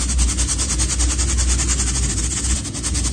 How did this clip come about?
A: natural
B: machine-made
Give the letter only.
A